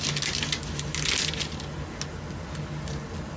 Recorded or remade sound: recorded